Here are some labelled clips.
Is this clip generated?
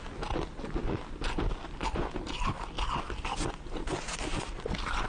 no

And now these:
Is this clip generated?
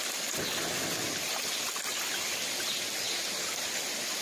no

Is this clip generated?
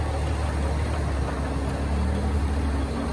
no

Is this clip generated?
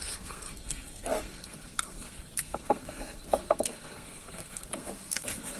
yes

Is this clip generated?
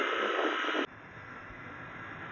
no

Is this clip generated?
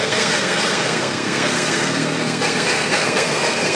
yes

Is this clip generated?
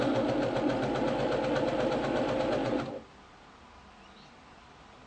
no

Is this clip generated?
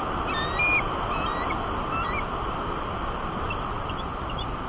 no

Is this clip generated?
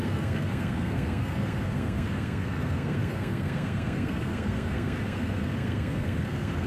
yes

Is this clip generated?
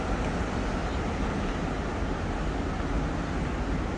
no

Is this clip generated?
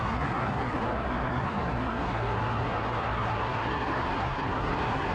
yes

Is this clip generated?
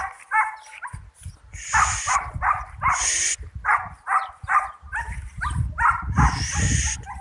no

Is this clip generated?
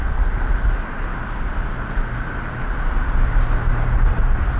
no